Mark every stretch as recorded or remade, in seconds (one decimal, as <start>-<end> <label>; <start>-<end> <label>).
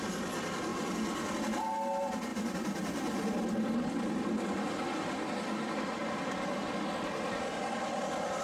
0.0-8.4 recorded